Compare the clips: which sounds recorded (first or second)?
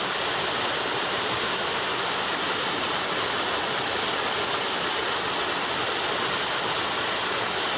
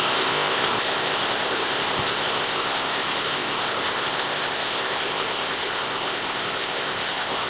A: first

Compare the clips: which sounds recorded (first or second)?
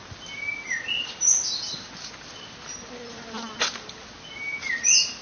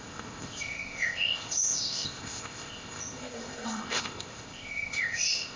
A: first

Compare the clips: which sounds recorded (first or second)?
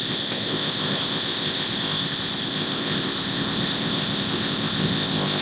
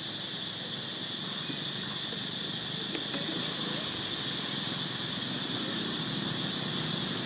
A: second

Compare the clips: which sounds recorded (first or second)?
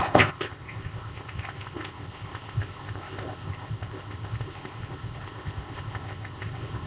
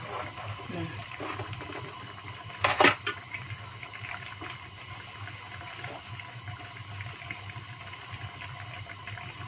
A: second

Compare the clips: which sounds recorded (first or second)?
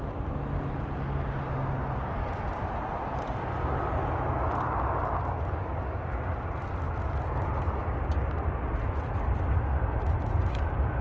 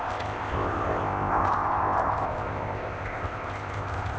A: first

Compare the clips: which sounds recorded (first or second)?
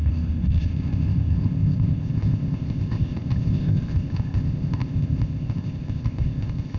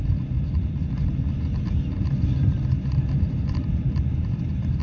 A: second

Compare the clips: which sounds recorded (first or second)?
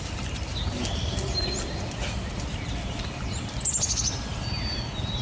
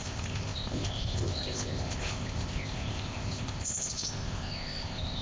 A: first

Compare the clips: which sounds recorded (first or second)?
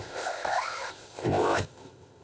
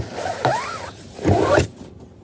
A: second